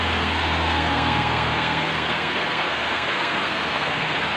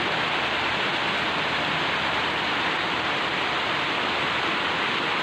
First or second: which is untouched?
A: second